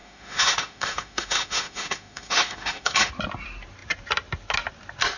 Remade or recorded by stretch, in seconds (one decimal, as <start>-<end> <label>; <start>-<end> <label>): 0.0-3.1 remade; 3.1-5.2 recorded